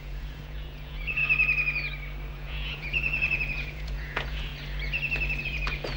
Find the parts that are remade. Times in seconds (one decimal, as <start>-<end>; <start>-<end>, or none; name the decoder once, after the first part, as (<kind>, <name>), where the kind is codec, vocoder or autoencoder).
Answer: 0.0-1.2 (vocoder, Vocos); 2.3-4.5; 5.4-6.0

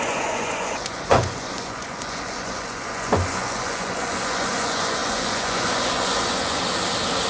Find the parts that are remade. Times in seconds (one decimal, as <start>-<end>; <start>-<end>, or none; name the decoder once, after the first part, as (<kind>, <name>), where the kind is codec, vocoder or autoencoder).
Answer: 0.0-6.6 (vocoder, Vocos)